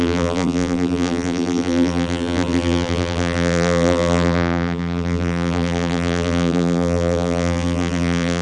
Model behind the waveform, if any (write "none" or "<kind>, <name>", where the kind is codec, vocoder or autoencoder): vocoder, BigVGAN v2